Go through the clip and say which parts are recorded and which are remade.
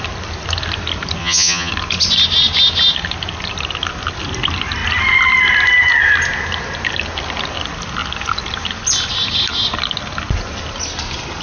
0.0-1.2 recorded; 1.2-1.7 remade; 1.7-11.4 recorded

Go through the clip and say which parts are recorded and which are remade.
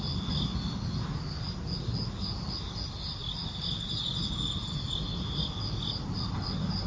0.0-6.9 recorded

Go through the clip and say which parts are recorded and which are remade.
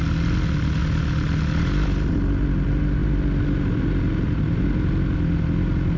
0.0-6.0 recorded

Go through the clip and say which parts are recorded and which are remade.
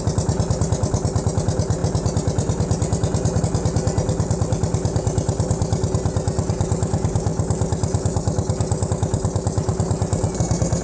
0.0-10.8 recorded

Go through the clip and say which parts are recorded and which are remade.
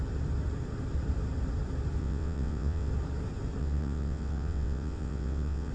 0.0-2.0 recorded; 2.0-2.9 remade; 2.9-3.6 recorded; 3.6-5.7 remade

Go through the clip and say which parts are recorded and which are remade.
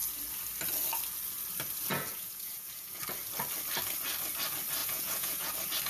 0.0-1.9 recorded; 1.9-3.0 remade; 3.0-4.8 recorded; 4.8-5.5 remade; 5.5-5.9 recorded